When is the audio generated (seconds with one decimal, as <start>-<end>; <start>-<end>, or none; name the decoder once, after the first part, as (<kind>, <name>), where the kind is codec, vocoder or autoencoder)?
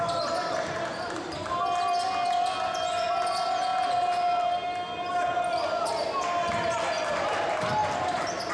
7.8-8.5 (vocoder, BigVGAN v2)